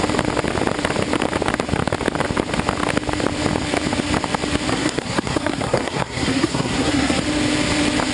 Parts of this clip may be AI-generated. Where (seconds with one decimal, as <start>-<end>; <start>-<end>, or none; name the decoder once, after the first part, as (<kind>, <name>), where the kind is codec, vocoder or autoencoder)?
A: 4.7-7.2 (codec, SNAC)